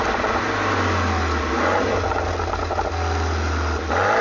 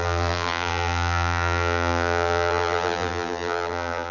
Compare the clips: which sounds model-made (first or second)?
second